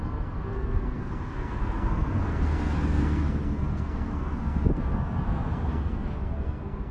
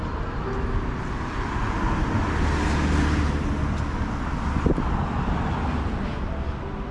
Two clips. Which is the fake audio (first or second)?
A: first